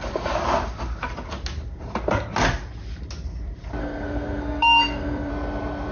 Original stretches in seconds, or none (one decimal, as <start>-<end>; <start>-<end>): 0.0-3.8; 5.3-5.9